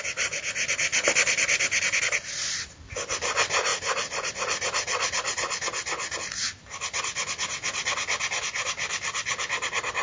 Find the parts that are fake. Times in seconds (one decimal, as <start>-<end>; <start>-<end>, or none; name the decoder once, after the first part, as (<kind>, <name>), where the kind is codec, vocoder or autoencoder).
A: 3.7-4.3 (vocoder, Vocos)

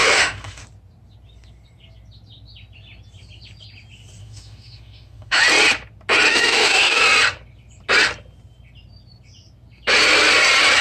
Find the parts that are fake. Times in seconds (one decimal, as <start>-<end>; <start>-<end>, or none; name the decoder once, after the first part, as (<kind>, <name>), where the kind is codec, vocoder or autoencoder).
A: 0.0-0.6 (autoencoder, DAC-VAE); 4.2-5.4; 6.3-7.0

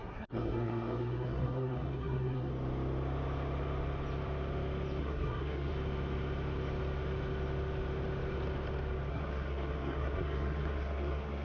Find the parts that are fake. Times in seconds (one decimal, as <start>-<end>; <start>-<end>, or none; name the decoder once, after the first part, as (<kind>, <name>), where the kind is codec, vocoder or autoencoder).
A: 0.0-2.5 (codec, SNAC); 5.0-5.7; 9.1-11.4